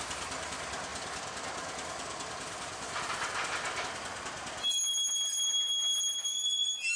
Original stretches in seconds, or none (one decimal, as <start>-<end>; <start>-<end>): none